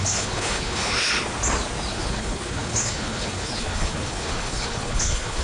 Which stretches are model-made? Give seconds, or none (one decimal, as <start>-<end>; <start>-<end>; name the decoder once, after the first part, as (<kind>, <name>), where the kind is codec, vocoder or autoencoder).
0.0-0.9 (codec, HILCodec); 1.9-5.4